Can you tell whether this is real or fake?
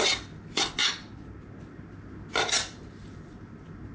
real